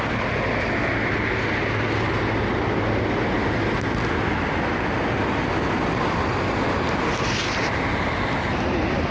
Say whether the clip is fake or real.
real